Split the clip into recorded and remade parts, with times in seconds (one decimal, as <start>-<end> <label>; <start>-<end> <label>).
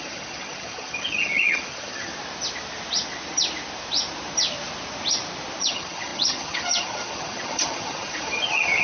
0.0-2.1 remade; 2.1-5.6 recorded; 5.6-8.8 remade